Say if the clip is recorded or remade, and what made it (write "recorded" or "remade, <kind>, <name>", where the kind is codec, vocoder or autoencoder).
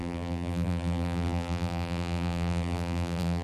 remade, vocoder, BigVGAN v2